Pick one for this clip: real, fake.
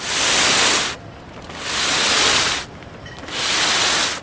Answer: real